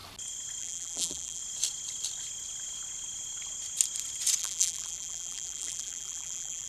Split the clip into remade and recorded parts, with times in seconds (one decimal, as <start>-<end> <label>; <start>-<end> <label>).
0.0-0.6 recorded; 0.6-1.4 remade; 1.4-4.4 recorded; 4.4-6.7 remade